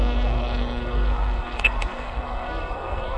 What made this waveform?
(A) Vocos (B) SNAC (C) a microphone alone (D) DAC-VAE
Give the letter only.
B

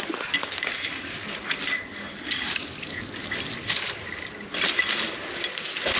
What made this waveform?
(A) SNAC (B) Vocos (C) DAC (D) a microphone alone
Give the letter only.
D